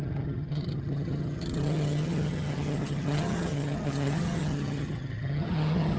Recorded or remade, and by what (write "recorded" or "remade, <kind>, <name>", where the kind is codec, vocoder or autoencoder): remade, vocoder, HiFi-GAN